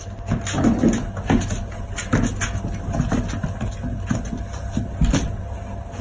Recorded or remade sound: recorded